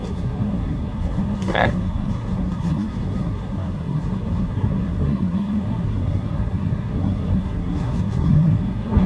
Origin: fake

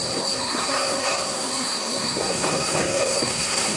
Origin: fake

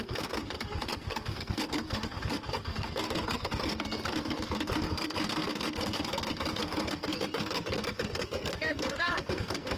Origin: fake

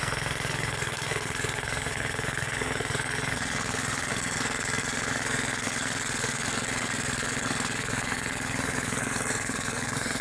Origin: fake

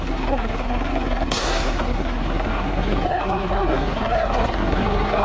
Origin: fake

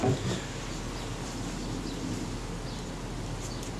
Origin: real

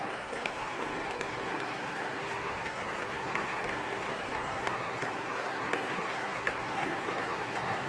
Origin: fake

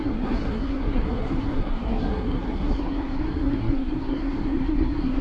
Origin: fake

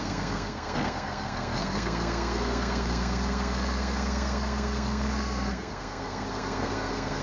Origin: fake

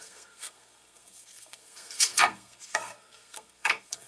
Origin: fake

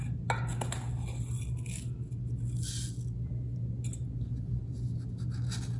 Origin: real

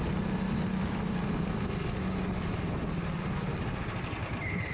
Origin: real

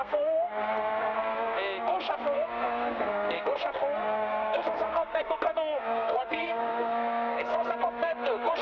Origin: fake